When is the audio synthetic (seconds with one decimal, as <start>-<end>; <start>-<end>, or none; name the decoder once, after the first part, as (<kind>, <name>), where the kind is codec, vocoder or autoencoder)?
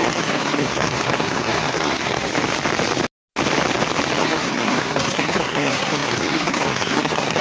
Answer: 0.0-2.3 (codec, SNAC); 4.2-7.4